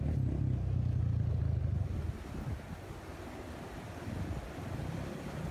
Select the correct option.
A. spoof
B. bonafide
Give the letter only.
B